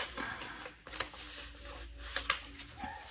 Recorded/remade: recorded